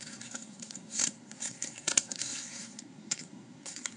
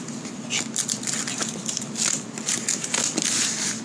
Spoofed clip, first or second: first